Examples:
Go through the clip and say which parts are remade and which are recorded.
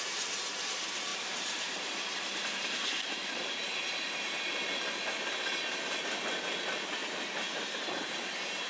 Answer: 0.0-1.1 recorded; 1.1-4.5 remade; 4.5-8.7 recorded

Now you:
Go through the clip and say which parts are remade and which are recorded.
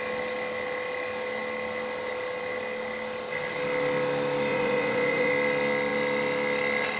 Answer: 0.0-4.5 recorded; 4.5-5.3 remade; 5.3-7.0 recorded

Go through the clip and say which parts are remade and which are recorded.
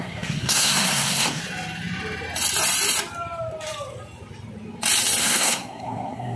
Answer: 0.0-1.4 remade; 1.4-5.2 recorded; 5.2-6.4 remade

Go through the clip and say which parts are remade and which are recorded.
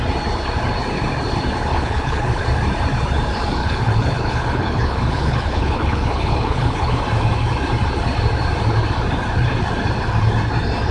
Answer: 0.0-1.7 recorded; 1.7-2.4 remade; 2.4-3.6 recorded; 3.6-7.0 remade; 7.0-10.9 recorded